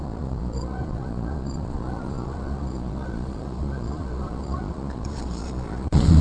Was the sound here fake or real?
fake